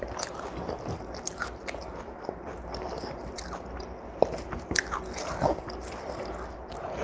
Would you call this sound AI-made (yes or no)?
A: no